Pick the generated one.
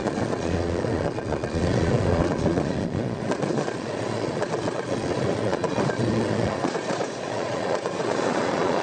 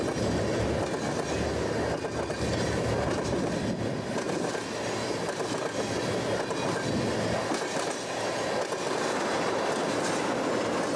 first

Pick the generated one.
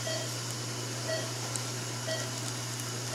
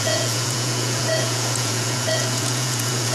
second